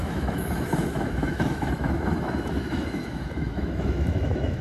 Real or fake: fake